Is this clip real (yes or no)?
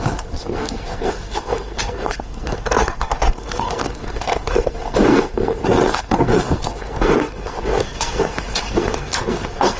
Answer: no